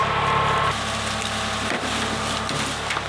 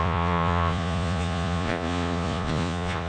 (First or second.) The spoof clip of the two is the second